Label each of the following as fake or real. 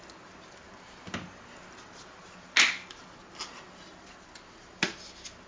real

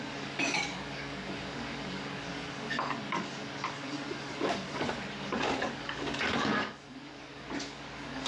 fake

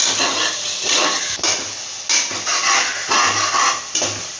real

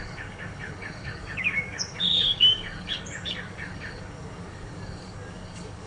fake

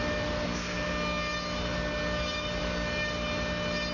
real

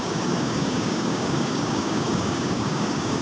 fake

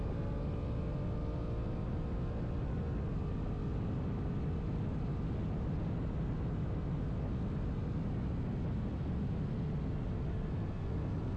real